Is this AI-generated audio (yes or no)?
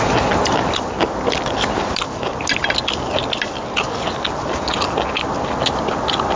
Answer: no